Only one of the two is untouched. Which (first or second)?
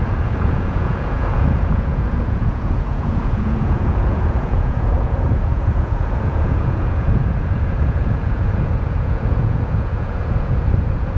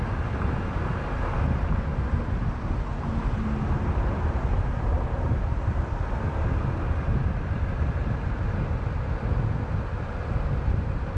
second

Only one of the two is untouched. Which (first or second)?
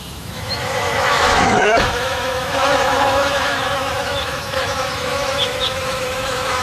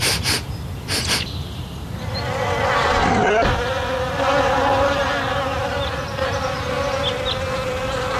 second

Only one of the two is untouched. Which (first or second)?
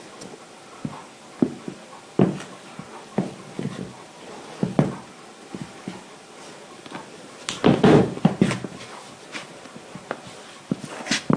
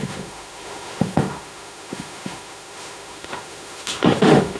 first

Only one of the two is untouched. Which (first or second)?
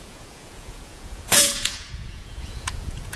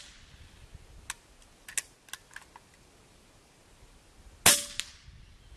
second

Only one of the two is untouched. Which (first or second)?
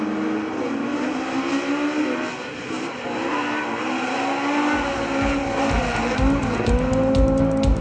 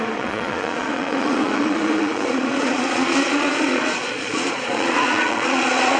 first